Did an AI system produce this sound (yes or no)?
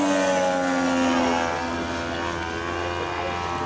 no